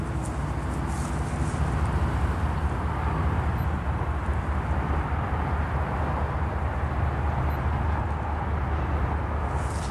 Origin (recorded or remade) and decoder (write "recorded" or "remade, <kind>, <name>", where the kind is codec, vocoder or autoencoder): recorded